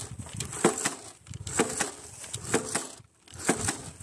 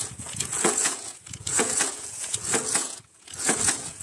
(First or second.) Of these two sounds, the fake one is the second